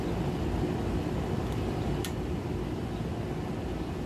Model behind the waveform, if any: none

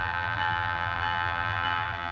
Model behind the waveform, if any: vocoder, BigVGAN v2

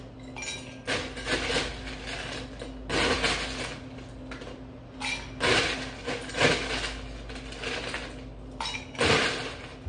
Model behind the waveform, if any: none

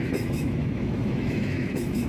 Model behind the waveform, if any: autoencoder, DAC-VAE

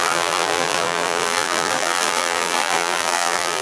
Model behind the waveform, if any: vocoder, BigVGAN v2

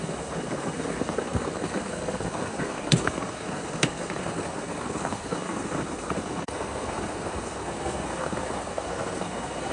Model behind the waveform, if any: codec, SNAC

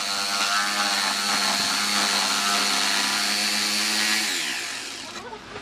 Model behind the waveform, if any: none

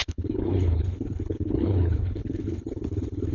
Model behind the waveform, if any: codec, HILCodec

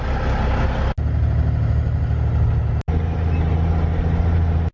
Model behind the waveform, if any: none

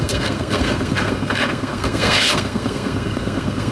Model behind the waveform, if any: codec, SNAC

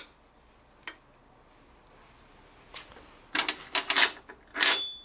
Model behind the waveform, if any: none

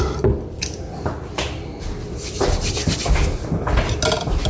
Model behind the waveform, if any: none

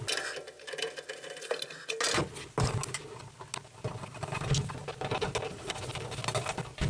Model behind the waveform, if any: none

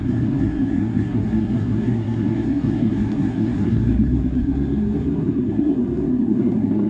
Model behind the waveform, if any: codec, SNAC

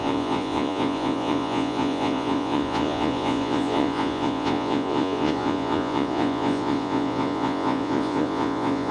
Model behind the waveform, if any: vocoder, Vocos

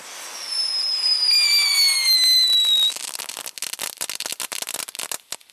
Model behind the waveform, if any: none